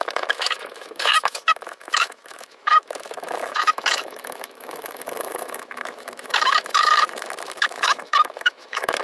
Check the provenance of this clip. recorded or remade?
remade